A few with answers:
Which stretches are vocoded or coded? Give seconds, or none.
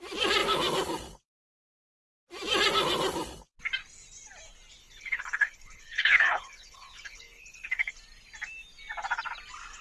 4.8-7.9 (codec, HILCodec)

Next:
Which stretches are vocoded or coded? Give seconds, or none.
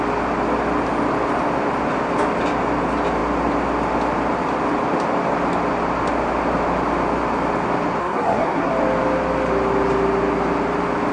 8.0-8.7 (codec, SNAC)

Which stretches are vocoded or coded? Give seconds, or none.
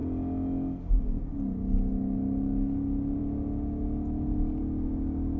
none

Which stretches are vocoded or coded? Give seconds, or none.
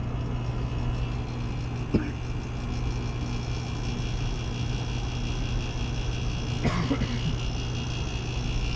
none